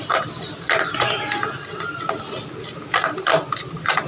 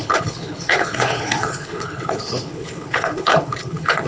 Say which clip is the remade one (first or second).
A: second